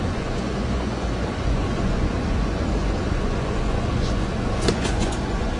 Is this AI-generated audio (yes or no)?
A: yes